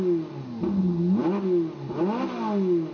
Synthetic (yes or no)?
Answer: no